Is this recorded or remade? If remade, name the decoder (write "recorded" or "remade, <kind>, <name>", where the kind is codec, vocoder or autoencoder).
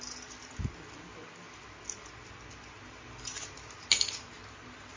recorded